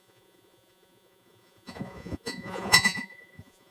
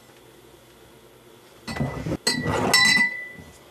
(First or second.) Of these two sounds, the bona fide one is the second